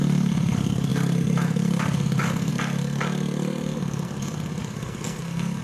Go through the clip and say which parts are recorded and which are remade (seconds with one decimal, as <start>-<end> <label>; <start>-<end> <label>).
0.0-5.6 remade

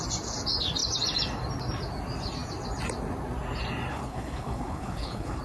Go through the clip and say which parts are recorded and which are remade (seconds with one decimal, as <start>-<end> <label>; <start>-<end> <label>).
0.0-3.9 recorded; 3.9-5.4 remade

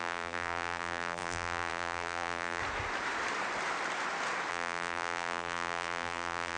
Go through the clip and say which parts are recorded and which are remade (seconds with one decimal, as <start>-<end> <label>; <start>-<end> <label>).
0.0-2.6 remade; 2.6-4.5 recorded; 4.5-6.6 remade

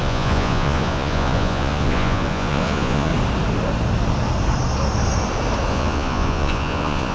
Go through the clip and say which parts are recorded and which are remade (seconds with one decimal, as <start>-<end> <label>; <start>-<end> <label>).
0.0-3.1 remade; 3.1-5.7 recorded; 5.7-7.1 remade

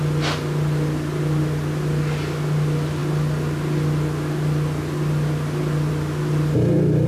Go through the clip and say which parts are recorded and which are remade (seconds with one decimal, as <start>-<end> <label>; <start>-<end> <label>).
0.0-7.1 recorded

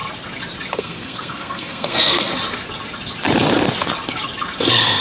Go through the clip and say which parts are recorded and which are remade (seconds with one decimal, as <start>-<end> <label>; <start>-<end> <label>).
0.0-0.7 recorded; 0.7-2.3 remade; 2.3-4.6 recorded; 4.6-5.0 remade